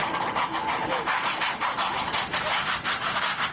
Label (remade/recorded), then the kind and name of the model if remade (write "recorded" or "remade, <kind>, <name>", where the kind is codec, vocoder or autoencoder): recorded